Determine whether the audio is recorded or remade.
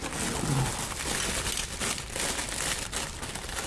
recorded